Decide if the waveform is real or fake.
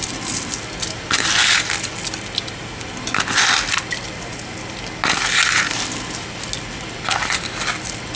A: real